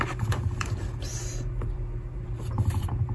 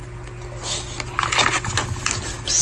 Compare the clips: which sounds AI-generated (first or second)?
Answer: first